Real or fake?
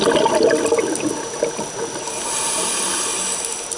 real